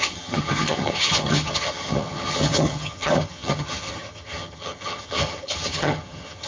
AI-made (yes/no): yes